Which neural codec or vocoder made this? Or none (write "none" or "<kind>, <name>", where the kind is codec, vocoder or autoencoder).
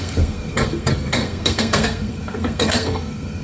codec, SNAC